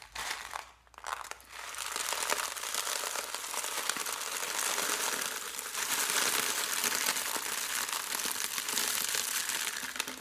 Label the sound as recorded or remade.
recorded